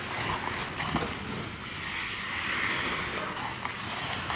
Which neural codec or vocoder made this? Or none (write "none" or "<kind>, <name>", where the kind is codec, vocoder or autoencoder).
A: none